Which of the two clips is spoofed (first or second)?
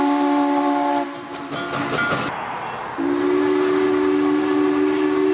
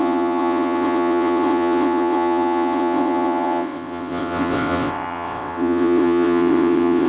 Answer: second